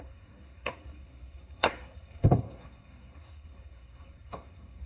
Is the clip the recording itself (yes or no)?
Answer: no